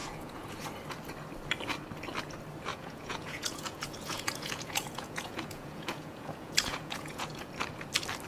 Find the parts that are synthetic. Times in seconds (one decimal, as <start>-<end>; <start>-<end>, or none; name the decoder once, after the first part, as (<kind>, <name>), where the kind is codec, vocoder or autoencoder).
0.0-0.5 (vocoder, Vocos); 2.7-7.5